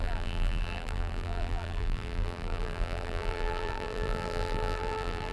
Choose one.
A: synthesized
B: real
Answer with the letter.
A